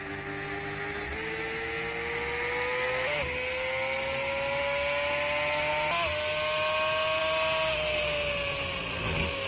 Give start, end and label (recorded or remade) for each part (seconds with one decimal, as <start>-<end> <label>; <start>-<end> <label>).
0.0-9.5 recorded